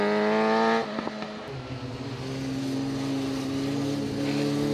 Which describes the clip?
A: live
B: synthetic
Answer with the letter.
A